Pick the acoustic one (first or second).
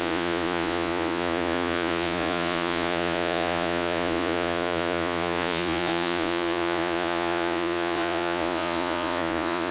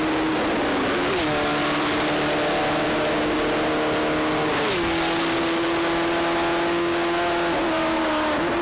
second